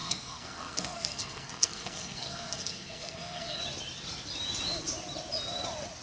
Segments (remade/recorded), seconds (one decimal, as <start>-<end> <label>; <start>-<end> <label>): 0.0-3.6 remade; 3.6-6.0 recorded